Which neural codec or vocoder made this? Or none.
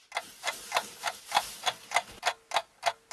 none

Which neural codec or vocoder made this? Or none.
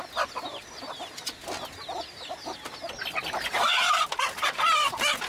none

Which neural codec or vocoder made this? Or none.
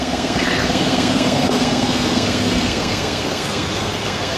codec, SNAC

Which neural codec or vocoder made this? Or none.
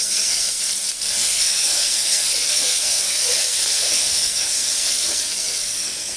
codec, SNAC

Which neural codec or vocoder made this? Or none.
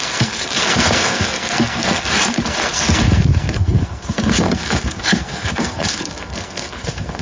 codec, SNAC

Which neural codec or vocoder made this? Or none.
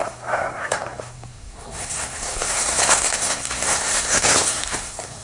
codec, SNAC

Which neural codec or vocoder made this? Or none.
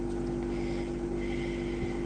none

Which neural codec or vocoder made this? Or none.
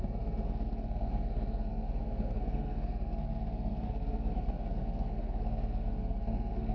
codec, SNAC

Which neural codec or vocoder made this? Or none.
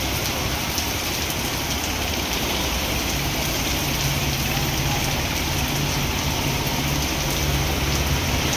none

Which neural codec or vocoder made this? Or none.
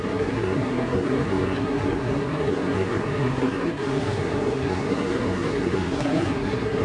codec, SNAC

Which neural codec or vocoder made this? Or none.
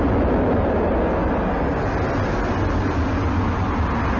none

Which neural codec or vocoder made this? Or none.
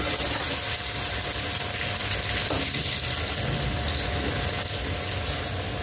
none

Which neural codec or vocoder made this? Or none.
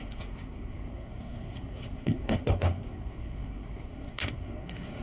codec, SNAC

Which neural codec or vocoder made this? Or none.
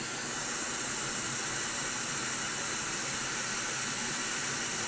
none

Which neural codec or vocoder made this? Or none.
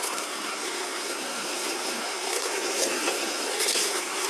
codec, SNAC